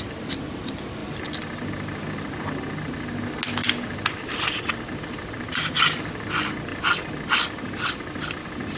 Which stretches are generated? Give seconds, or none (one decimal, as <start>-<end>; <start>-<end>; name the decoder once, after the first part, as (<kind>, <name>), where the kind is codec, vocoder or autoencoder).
none